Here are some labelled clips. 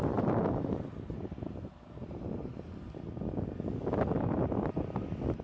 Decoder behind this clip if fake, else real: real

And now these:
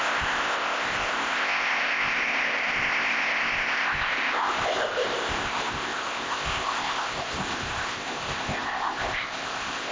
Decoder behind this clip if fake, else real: fake, codec, ZipCodec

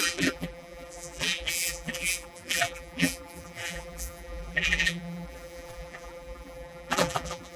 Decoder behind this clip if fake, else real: fake, vocoder, BigVGAN v2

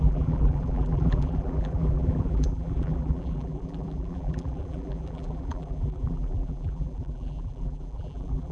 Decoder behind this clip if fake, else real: fake, vocoder, BigVGAN v2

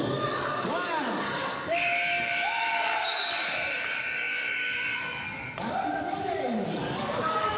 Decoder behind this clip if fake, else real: fake, codec, DAC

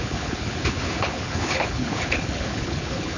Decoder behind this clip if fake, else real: fake, codec, HILCodec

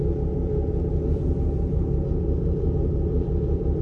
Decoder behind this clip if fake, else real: real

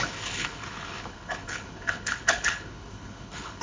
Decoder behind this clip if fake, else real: fake, codec, HILCodec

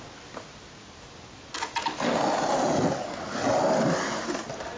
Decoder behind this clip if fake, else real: real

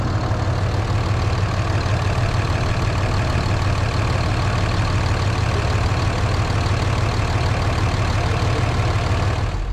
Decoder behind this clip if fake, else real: real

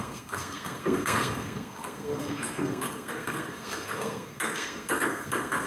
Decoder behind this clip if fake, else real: fake, codec, SNAC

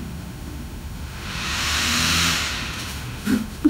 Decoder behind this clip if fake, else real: fake, autoencoder, DAC-VAE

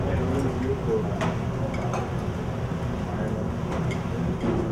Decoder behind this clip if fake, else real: real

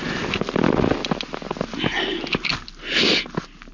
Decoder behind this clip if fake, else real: real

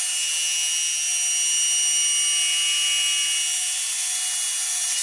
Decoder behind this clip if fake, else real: real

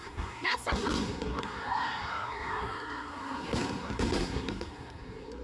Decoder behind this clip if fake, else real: fake, codec, SNAC